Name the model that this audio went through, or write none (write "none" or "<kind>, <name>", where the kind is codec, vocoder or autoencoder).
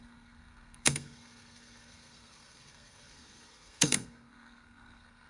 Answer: codec, SNAC